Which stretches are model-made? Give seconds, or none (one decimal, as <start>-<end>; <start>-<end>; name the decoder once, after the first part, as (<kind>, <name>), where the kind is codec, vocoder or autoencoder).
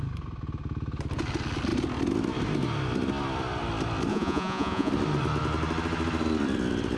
4.1-4.9 (vocoder, Vocos)